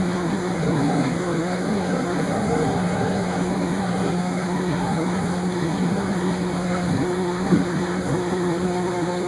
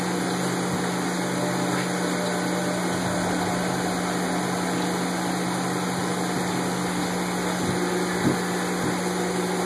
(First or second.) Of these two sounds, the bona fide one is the second